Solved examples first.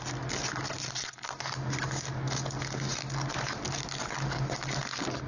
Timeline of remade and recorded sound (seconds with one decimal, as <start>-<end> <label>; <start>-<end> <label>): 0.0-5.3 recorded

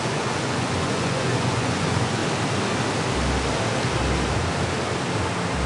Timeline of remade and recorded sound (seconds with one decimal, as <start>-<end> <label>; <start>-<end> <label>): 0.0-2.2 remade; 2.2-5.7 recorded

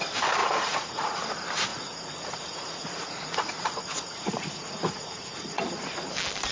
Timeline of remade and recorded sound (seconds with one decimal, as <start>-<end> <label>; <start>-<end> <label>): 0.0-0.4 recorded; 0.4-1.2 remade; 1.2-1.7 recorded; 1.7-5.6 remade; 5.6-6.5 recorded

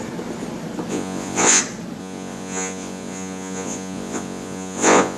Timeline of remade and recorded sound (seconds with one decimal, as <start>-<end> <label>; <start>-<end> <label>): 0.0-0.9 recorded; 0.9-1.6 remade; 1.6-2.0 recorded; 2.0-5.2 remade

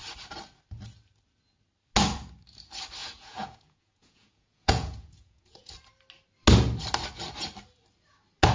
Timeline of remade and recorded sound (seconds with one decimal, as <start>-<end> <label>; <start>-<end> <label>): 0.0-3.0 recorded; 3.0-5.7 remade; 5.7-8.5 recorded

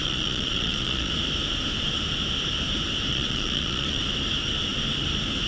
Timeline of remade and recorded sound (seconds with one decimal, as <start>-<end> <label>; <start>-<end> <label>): 0.0-1.1 remade; 1.1-3.1 recorded; 3.1-4.0 remade; 4.0-5.5 recorded

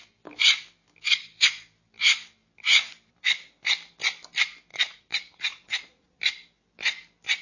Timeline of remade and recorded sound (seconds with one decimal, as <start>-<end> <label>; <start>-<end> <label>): 0.0-4.7 recorded; 4.7-6.2 remade; 6.2-7.4 recorded